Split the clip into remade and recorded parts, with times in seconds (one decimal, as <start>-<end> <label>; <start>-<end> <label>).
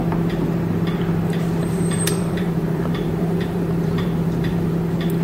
0.0-1.6 recorded; 1.6-4.7 remade; 4.7-5.2 recorded